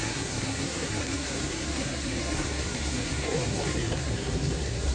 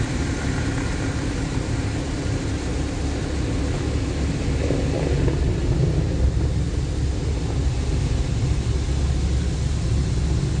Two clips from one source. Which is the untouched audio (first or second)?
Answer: second